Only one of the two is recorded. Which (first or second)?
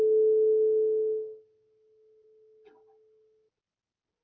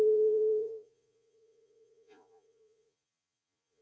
first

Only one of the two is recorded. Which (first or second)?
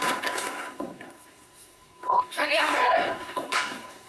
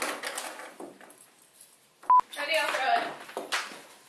second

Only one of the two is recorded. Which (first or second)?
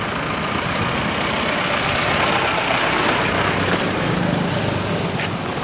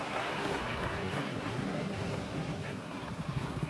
first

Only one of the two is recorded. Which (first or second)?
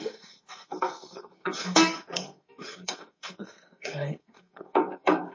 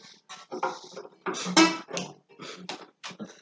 second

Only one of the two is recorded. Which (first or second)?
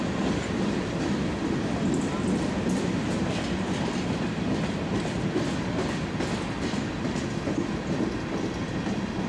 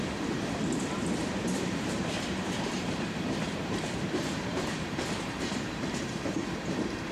first